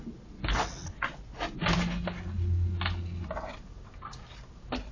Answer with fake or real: real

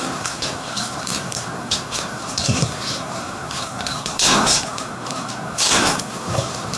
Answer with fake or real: fake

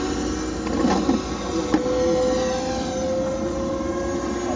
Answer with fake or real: real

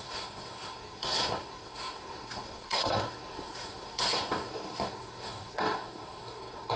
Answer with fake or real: fake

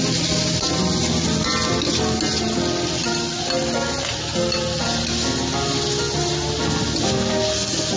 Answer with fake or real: real